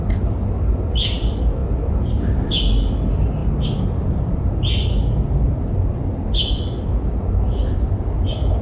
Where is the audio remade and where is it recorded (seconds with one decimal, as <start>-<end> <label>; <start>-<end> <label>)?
0.0-8.6 recorded